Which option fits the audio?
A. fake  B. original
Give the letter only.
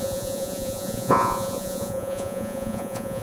A